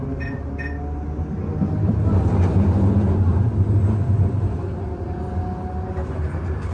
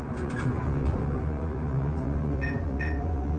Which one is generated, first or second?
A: second